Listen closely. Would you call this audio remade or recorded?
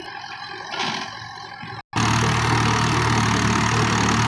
recorded